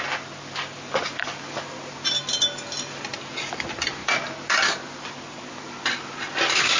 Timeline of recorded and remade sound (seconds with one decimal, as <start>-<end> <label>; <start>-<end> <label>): 0.0-6.8 recorded